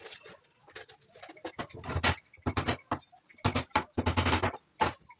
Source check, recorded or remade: recorded